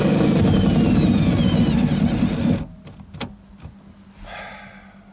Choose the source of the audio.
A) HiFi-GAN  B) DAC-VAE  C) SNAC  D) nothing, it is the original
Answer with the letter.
D